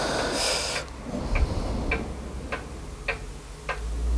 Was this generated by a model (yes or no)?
no